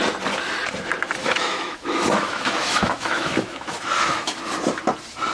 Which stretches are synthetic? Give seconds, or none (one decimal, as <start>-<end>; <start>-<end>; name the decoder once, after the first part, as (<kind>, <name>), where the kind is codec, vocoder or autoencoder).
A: 1.2-4.4 (autoencoder, DAC-VAE)